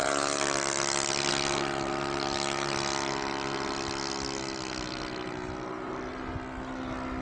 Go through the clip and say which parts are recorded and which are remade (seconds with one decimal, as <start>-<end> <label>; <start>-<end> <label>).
0.0-7.2 recorded